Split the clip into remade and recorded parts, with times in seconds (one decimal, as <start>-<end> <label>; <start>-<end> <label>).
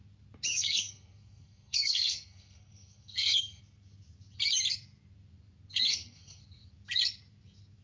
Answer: 0.0-0.5 recorded; 0.5-3.6 remade; 3.6-5.9 recorded; 5.9-6.4 remade; 6.4-7.8 recorded